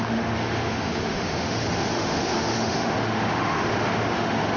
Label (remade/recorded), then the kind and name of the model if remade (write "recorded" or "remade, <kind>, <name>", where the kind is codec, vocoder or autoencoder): remade, autoencoder, DAC-VAE